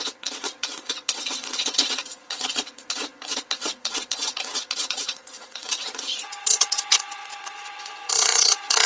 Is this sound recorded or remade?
remade